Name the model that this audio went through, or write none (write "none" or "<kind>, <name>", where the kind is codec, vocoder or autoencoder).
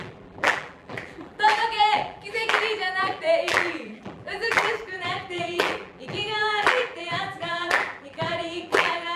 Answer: vocoder, BigVGAN v2